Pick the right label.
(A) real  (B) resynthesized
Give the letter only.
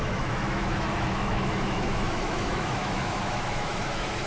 B